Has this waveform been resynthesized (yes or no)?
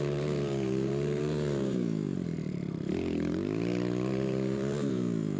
yes